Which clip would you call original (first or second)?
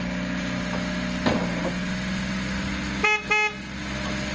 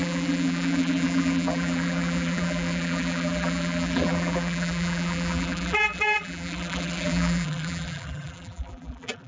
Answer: first